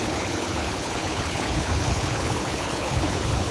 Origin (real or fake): fake